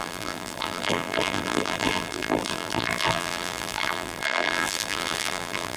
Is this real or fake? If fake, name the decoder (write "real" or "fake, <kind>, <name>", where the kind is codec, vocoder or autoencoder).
fake, vocoder, BigVGAN v2